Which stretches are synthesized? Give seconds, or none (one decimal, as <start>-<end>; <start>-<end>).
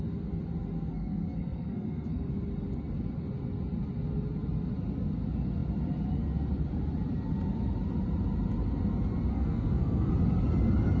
0.9-2.3; 9.3-10.1